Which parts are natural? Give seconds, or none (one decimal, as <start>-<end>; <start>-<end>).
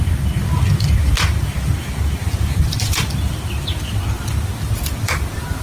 0.0-2.2; 3.0-5.6